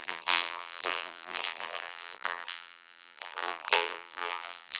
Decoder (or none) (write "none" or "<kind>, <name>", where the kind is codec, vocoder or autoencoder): vocoder, BigVGAN v2